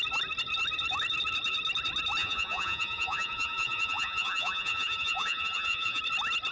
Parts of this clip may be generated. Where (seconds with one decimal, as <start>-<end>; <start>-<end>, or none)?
2.2-6.0